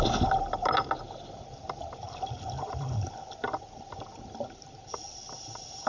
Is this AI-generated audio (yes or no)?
no